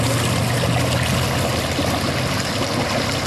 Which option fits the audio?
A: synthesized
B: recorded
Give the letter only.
B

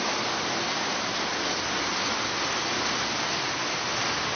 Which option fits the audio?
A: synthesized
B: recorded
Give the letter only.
B